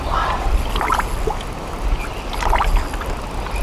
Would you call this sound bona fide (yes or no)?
yes